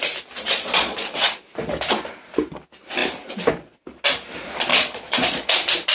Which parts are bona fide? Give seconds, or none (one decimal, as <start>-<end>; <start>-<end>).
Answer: 0.0-0.5; 1.3-4.7; 5.5-5.9